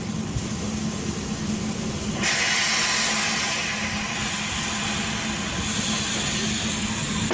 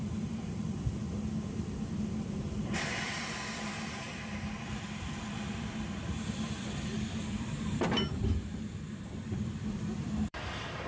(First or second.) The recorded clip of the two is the first